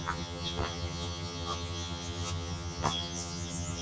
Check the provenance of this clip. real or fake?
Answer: fake